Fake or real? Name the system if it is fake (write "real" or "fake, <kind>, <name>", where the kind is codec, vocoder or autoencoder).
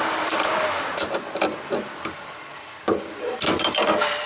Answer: fake, vocoder, BigVGAN v2